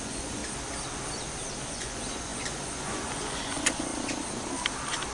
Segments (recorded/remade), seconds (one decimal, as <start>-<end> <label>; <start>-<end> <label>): 0.0-0.4 remade; 0.4-1.7 recorded; 1.7-3.9 remade; 3.9-5.1 recorded